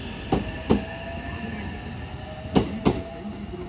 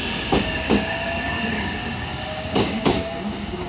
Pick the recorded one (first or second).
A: first